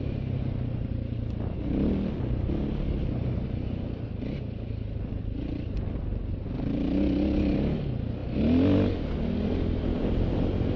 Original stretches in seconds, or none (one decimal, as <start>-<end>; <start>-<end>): 0.0-10.8